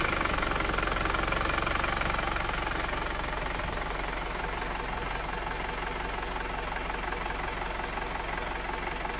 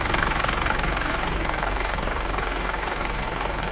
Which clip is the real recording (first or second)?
first